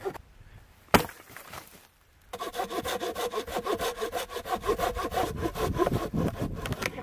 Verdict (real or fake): fake